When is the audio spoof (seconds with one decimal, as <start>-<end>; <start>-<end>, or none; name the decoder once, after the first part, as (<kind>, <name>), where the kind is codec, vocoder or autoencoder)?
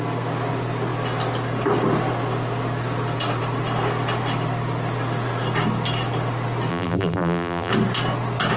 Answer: 6.7-7.7 (vocoder, BigVGAN v2)